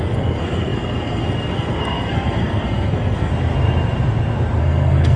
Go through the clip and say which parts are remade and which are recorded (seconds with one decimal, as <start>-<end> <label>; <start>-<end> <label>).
0.0-3.3 remade; 3.3-4.6 recorded; 4.6-5.2 remade